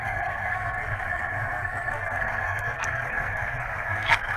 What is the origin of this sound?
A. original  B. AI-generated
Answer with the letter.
B